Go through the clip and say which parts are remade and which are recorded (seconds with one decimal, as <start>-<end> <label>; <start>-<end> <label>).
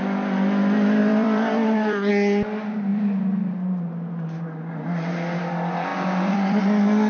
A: 0.0-1.0 recorded; 1.0-2.1 remade; 2.1-5.9 recorded; 5.9-6.6 remade; 6.6-7.1 recorded